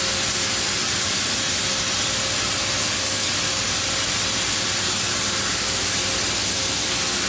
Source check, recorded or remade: recorded